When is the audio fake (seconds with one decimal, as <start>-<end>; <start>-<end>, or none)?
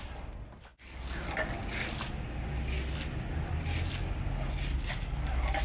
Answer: none